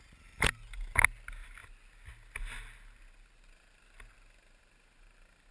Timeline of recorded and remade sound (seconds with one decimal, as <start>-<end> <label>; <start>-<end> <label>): 0.0-5.5 recorded